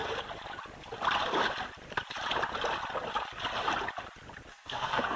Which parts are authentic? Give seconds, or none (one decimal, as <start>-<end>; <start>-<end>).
0.0-4.5